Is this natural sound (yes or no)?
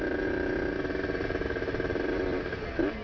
no